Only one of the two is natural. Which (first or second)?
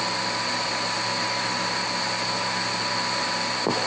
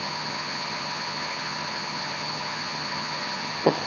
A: first